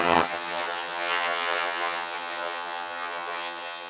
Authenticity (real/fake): fake